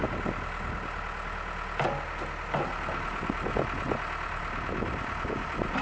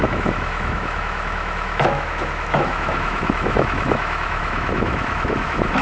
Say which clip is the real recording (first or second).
first